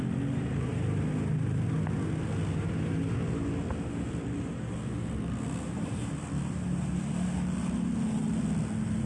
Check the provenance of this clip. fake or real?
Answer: real